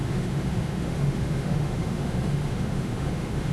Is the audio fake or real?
fake